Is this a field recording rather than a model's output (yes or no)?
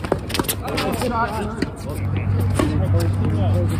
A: yes